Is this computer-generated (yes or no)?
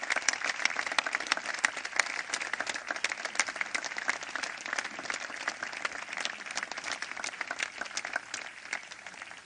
no